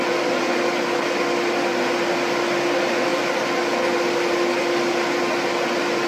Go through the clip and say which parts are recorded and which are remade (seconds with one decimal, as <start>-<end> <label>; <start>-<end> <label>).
0.0-6.1 recorded